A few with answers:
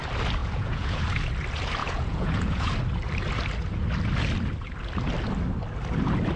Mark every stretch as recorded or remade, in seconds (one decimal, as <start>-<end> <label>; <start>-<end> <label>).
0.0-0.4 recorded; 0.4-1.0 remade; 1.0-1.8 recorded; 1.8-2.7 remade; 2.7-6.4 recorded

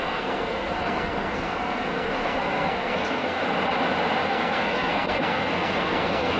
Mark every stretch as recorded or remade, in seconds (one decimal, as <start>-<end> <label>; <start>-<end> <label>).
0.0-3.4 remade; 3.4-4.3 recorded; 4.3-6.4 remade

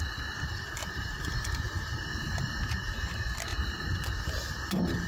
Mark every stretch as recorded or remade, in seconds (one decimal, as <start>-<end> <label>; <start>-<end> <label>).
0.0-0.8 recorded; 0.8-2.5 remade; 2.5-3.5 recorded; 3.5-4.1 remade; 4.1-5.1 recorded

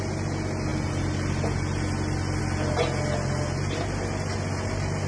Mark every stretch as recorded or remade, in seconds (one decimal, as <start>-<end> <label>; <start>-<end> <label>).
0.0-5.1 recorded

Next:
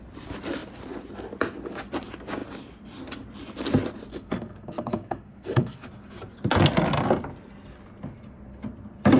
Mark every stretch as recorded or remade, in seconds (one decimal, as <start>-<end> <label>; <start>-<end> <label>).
0.0-4.1 recorded; 4.1-5.9 remade; 5.9-9.2 recorded

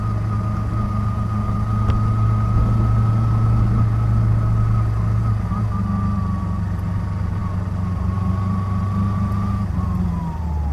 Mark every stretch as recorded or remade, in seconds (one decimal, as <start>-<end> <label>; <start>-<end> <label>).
0.0-10.7 recorded

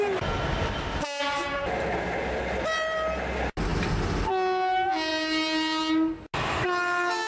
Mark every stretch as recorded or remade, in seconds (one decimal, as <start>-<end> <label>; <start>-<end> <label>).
0.0-7.3 recorded

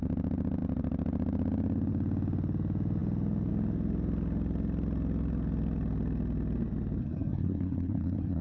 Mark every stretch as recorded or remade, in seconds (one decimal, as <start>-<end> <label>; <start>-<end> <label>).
0.0-7.0 recorded; 7.0-8.4 remade